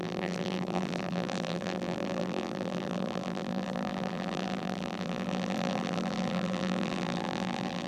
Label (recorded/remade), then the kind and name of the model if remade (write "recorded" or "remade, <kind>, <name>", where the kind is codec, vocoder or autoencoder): remade, vocoder, BigVGAN v2